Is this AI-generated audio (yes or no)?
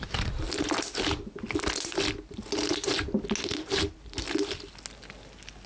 no